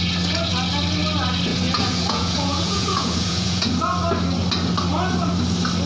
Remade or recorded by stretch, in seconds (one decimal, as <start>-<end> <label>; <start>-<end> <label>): 0.0-1.5 recorded; 1.5-3.7 remade; 3.7-5.9 recorded